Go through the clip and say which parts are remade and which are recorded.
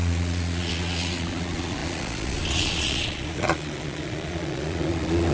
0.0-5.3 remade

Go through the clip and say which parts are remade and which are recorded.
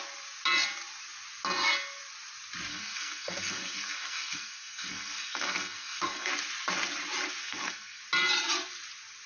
0.0-2.7 recorded; 2.7-6.3 remade; 6.3-7.4 recorded; 7.4-8.0 remade; 8.0-9.3 recorded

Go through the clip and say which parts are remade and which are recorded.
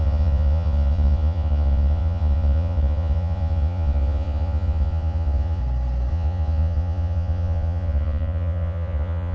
0.0-5.6 remade; 5.6-6.1 recorded; 6.1-9.3 remade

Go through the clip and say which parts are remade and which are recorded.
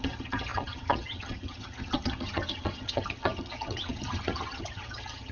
0.0-5.3 remade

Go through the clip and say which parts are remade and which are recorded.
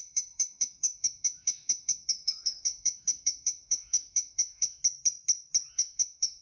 0.0-4.8 remade; 4.8-5.7 recorded; 5.7-6.4 remade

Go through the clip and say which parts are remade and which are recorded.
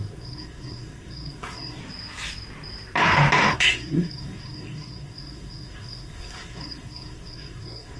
0.0-1.8 remade; 1.8-3.5 recorded; 3.5-8.0 remade